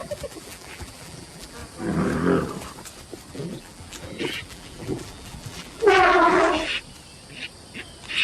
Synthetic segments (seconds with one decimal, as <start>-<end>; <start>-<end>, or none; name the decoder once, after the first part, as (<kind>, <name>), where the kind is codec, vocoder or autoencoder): 0.0-1.6 (vocoder, BigVGAN v2); 3.3-6.7